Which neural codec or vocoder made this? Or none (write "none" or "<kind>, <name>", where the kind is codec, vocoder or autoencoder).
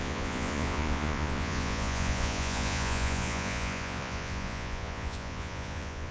vocoder, Vocos